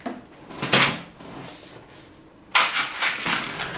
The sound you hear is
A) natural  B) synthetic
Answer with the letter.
A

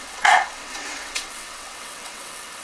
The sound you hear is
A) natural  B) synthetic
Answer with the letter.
B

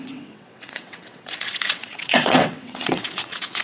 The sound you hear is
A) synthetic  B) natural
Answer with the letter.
A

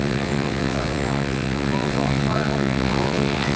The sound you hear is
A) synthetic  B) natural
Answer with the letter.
A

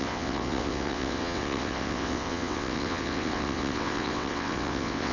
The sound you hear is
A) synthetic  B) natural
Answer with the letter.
A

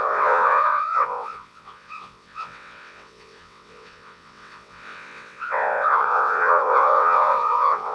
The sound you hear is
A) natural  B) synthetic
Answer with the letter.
B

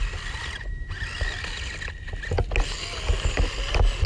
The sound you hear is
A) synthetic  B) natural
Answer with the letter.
B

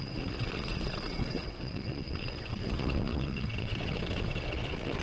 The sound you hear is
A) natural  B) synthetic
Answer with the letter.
B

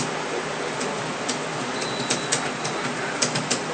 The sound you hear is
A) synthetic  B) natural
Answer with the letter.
B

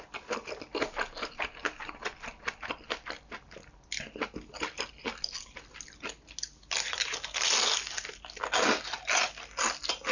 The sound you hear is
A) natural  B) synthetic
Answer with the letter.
A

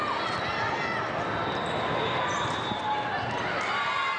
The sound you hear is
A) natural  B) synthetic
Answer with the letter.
A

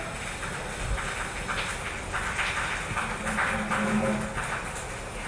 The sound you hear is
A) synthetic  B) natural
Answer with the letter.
B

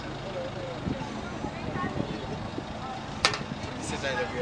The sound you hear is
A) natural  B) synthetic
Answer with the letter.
A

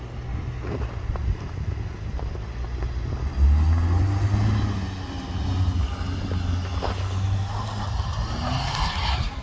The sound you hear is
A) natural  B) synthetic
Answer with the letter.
A